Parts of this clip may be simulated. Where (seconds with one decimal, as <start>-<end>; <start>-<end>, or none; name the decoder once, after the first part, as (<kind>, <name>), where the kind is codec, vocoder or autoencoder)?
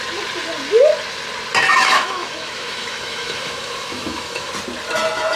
1.7-4.5 (autoencoder, DAC-VAE)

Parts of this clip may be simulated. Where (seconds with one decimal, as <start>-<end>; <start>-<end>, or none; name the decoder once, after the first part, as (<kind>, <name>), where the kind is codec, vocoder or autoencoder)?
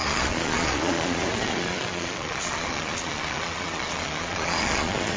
0.0-5.2 (vocoder, Vocos)